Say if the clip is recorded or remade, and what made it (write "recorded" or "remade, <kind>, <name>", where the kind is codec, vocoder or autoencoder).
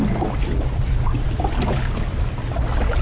recorded